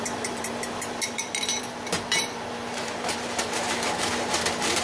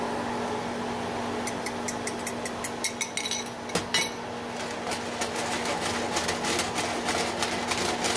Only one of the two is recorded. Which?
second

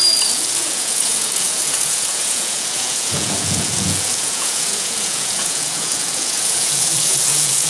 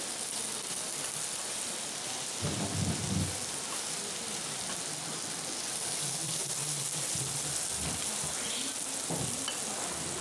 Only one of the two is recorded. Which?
second